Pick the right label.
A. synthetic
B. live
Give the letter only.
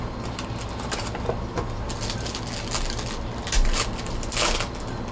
B